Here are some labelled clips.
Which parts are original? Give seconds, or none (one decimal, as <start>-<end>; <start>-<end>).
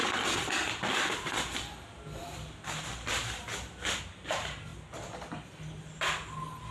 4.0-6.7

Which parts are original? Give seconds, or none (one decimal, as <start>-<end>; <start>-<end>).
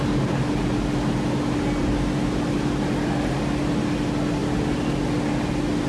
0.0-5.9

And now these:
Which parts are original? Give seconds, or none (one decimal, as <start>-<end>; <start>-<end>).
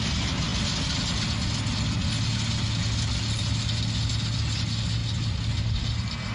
0.0-6.3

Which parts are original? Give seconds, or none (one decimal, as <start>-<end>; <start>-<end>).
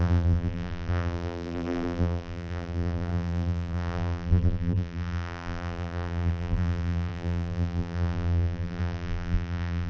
none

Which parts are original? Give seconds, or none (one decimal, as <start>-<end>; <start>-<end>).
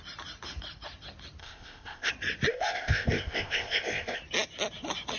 0.0-1.4; 2.1-2.5; 4.2-5.2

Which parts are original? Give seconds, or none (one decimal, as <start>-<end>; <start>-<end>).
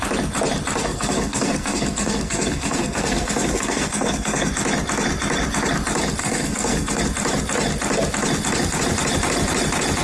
0.0-0.8; 4.5-6.2; 7.0-10.0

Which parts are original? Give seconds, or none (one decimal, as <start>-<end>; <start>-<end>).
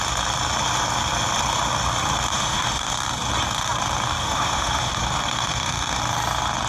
0.0-2.3; 2.9-4.2; 4.9-5.4; 6.0-6.7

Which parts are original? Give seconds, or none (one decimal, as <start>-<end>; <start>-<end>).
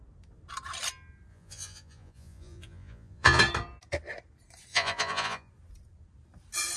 0.0-1.3; 3.4-4.7; 5.5-6.8